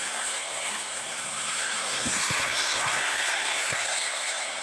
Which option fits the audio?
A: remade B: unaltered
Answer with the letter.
A